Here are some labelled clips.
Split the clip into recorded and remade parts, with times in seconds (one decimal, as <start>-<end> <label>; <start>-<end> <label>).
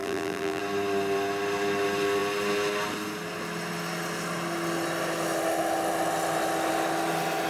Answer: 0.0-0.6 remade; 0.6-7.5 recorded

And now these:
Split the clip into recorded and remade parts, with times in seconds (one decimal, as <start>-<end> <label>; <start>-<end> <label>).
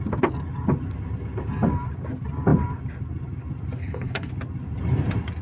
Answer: 0.0-3.8 recorded; 3.8-4.3 remade; 4.3-5.4 recorded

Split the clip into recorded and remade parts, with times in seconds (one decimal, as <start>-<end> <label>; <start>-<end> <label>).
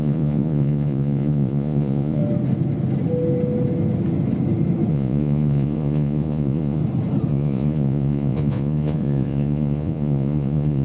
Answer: 0.0-2.2 remade; 2.2-4.9 recorded; 4.9-6.8 remade; 6.8-7.3 recorded; 7.3-10.8 remade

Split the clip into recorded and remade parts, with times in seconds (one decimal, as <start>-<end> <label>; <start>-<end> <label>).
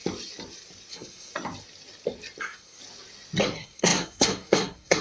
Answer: 0.0-0.9 recorded; 0.9-1.3 remade; 1.3-2.4 recorded; 2.4-2.8 remade; 2.8-3.4 recorded; 3.4-5.0 remade